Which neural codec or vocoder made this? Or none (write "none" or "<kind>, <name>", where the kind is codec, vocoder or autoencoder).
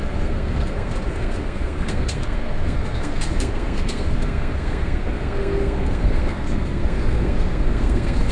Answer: codec, SNAC